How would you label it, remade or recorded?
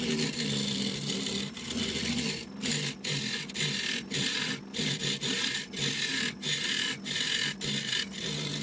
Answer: recorded